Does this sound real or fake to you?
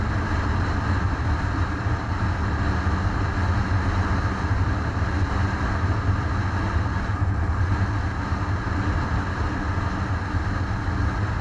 real